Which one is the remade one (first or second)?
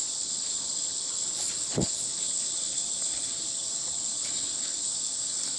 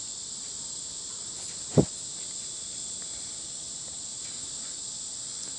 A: first